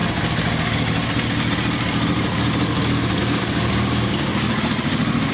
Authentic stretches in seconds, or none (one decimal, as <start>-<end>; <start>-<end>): 0.0-3.2; 4.3-5.3